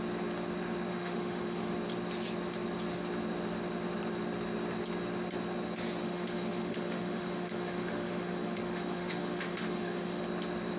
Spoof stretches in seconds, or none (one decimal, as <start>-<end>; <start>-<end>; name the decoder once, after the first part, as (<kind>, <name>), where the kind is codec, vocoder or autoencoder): 0.9-1.7 (autoencoder, DAC-VAE); 6.0-10.2